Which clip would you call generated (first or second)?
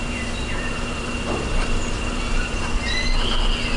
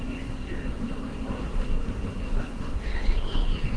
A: second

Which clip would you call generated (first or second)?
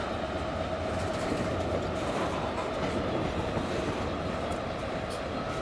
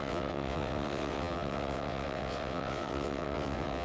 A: second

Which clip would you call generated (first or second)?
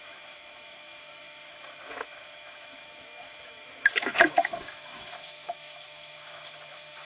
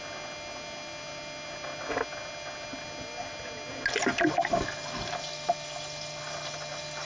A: first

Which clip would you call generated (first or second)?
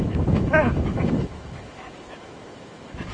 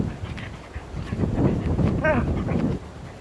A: first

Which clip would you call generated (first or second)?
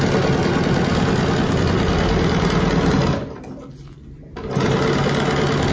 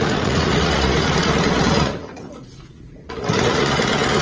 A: second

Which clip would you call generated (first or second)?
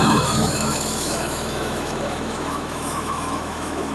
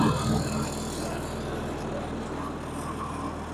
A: first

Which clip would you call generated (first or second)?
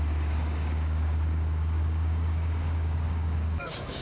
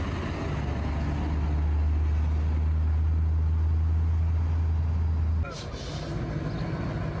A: first